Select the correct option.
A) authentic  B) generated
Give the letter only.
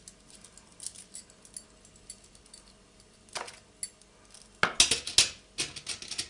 A